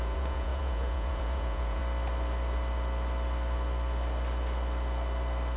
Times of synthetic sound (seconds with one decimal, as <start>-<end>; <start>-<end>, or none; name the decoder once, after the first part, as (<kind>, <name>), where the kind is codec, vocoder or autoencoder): 0.0-1.8 (vocoder, Vocos)